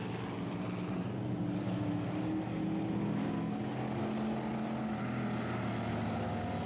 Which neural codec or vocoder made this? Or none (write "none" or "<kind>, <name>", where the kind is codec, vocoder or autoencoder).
none